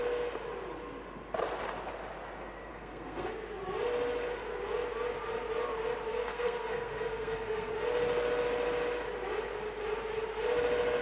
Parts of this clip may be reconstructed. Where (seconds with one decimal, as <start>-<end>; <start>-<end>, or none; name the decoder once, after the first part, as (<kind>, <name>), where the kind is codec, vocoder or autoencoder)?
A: 2.7-3.3 (codec, SNAC); 6.1-7.7